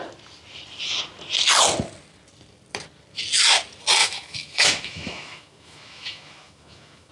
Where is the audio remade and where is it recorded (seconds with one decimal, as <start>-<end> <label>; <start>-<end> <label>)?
0.0-4.0 recorded; 4.0-7.1 remade